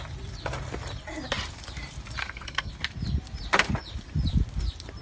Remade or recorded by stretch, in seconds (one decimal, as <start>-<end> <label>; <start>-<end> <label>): 0.0-2.2 recorded; 2.2-2.7 remade; 2.7-5.0 recorded